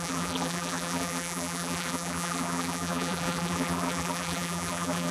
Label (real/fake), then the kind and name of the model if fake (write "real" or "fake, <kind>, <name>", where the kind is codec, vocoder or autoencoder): fake, vocoder, BigVGAN v2